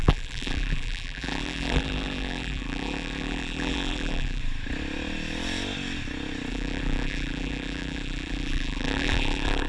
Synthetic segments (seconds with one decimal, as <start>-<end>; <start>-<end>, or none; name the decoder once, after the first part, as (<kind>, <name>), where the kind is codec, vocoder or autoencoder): 0.0-4.4 (vocoder, BigVGAN v2); 6.5-9.7